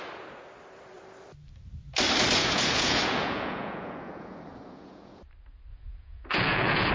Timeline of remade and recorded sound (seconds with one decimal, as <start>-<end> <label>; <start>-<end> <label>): 0.0-2.4 recorded; 2.4-5.2 remade; 5.2-5.7 recorded; 5.7-6.9 remade